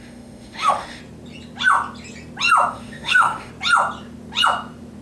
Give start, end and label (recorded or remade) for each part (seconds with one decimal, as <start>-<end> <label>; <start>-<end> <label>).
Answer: 0.0-1.0 remade; 1.0-2.7 recorded; 2.7-3.5 remade; 3.5-5.0 recorded